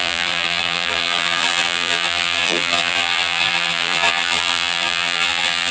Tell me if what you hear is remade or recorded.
remade